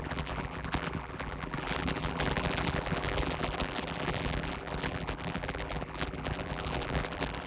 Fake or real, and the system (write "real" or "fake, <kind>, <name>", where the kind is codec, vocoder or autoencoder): fake, vocoder, BigVGAN v2